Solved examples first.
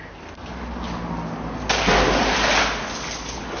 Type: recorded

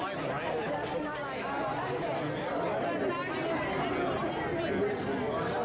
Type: recorded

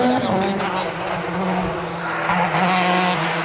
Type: recorded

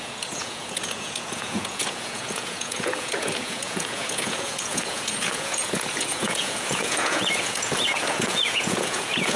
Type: remade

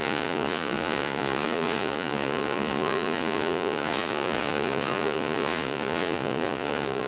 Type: remade